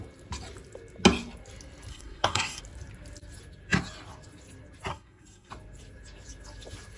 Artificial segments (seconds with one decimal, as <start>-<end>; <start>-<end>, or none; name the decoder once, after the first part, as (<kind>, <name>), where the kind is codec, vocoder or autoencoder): 1.9-2.6 (codec, SNAC); 4.9-5.5